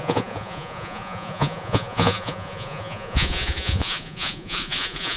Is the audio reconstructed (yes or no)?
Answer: yes